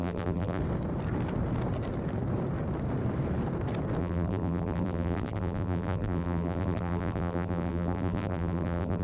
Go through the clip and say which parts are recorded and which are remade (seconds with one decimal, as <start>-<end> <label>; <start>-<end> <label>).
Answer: 0.0-0.6 remade; 0.6-4.0 recorded; 4.0-9.0 remade